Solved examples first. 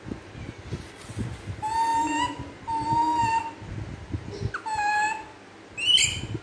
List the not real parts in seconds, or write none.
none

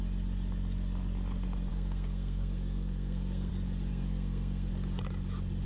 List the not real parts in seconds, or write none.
1.7-3.5 (codec, SNAC); 3.9-4.7

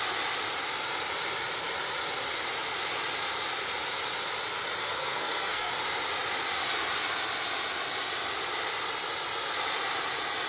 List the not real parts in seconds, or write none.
4.8-5.7 (codec, SNAC)

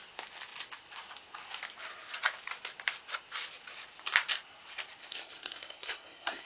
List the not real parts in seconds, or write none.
5.0-6.5 (codec, SNAC)

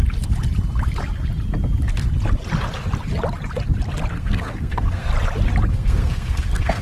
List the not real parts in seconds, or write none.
4.1-5.1 (codec, SNAC); 5.7-6.8

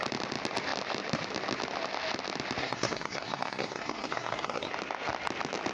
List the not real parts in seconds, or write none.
2.6-4.7 (codec, SNAC)

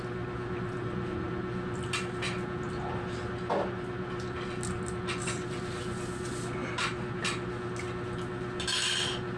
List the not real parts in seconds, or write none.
none

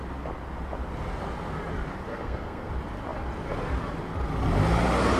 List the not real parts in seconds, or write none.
2.1-2.7 (codec, SNAC)